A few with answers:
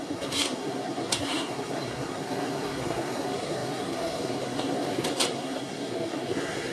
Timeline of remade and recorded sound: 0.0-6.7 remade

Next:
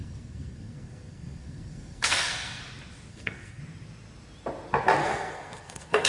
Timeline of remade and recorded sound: 0.0-2.6 remade; 2.6-3.1 recorded; 3.1-3.6 remade; 3.6-5.0 recorded; 5.0-6.1 remade

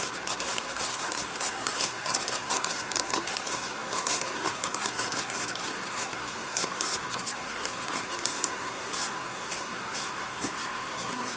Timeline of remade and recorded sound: 0.0-11.4 remade

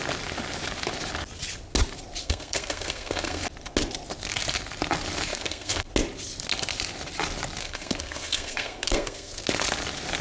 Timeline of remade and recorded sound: 0.0-2.2 recorded; 2.2-3.4 remade; 3.4-5.3 recorded; 5.3-5.9 remade; 5.9-7.6 recorded; 7.6-9.4 remade; 9.4-10.2 recorded

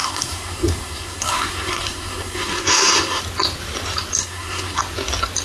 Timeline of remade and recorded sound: 0.0-3.2 remade; 3.2-4.2 recorded; 4.2-4.8 remade; 4.8-5.4 recorded